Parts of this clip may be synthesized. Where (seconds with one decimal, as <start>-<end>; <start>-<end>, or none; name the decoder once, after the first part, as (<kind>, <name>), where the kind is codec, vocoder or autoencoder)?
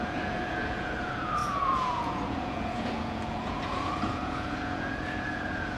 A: 0.0-5.8 (vocoder, Vocos)